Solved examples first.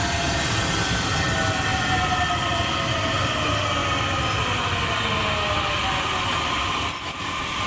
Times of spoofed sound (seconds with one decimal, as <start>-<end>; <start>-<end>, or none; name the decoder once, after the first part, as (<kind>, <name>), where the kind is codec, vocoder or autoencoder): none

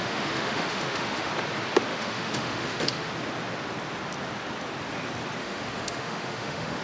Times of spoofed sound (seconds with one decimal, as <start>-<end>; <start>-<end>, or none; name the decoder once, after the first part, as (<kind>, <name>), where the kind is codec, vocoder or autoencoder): 0.0-1.3 (autoencoder, DAC-VAE); 1.9-3.1; 5.4-6.8

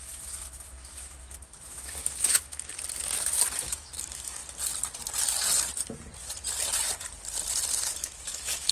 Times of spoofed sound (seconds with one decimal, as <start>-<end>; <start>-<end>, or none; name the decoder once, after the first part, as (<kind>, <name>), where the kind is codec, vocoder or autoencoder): 0.0-2.7 (autoencoder, DAC-VAE); 3.6-4.4; 8.0-8.7

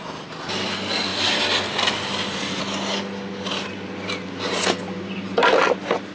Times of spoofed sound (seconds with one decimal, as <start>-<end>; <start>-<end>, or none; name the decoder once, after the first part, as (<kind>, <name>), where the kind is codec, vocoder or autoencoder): none

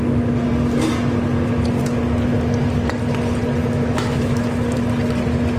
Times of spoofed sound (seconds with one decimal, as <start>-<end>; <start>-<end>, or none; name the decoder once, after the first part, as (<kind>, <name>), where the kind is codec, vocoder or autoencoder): 3.6-4.4 (autoencoder, DAC-VAE)

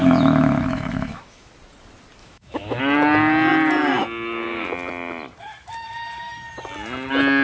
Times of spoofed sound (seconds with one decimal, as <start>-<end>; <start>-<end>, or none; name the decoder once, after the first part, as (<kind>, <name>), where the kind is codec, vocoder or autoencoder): 0.0-1.5 (autoencoder, DAC-VAE); 2.2-2.8

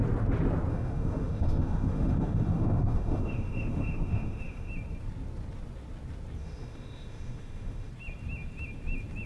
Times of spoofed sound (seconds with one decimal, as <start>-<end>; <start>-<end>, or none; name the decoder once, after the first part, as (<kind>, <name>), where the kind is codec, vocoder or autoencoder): 0.7-4.7 (autoencoder, DAC-VAE); 6.4-7.9